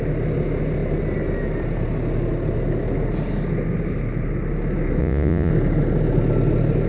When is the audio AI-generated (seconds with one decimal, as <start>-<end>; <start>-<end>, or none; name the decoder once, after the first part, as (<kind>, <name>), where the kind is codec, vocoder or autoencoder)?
5.0-5.5 (vocoder, Vocos)